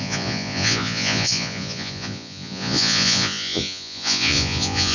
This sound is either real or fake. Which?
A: fake